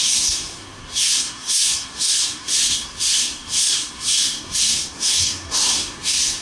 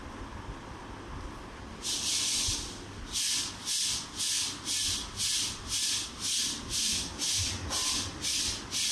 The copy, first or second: first